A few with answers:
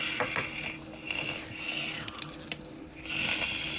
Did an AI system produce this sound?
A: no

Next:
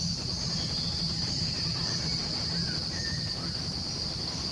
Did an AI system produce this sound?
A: yes